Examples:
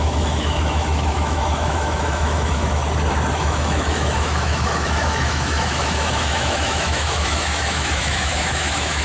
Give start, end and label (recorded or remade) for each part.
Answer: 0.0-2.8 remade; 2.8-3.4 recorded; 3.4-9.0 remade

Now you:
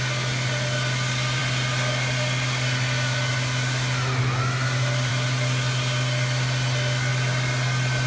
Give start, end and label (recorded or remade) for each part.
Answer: 0.0-8.1 recorded

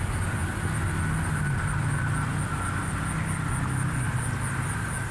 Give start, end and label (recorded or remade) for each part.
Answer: 0.0-5.1 recorded

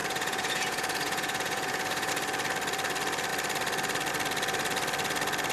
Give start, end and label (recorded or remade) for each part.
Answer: 0.0-2.1 remade; 2.1-5.5 recorded